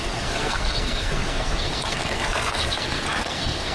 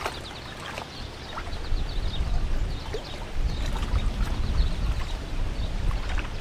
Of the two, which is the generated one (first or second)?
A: first